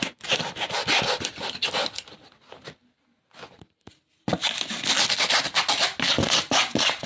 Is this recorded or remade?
recorded